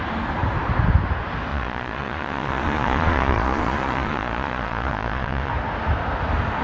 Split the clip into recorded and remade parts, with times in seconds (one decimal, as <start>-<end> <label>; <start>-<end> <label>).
0.0-1.5 recorded; 1.5-5.5 remade; 5.5-6.6 recorded